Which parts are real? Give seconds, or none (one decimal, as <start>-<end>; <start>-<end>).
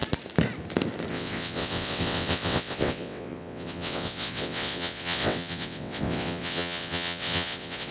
0.0-1.1